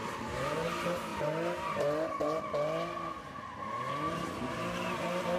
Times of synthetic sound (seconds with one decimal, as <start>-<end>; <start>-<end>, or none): none